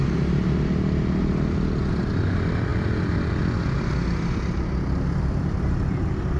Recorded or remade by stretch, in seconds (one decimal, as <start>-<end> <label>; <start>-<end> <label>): 0.0-1.2 recorded; 1.2-6.4 remade